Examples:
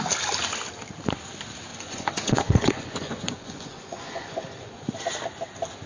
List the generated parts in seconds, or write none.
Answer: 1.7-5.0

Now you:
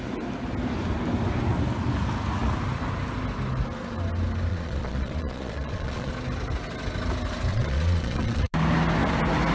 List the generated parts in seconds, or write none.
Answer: 4.5-6.1; 7.5-8.5

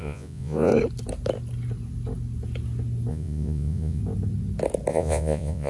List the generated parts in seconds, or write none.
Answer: 0.0-0.7; 3.1-4.0; 4.9-5.7

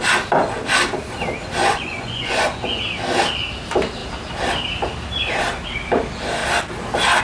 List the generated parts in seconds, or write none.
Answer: 1.6-2.8